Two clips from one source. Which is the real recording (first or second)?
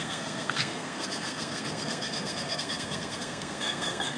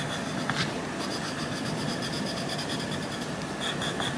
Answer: second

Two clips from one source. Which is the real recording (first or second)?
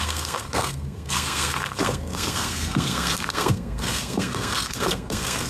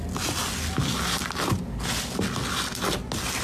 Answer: second